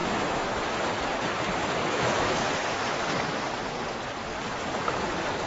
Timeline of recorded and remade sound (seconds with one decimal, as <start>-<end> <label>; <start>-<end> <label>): 0.0-0.9 remade; 0.9-1.9 recorded; 1.9-2.5 remade; 2.5-5.5 recorded